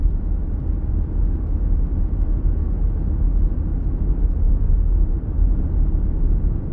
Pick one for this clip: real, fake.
real